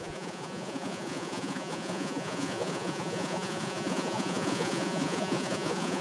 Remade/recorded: remade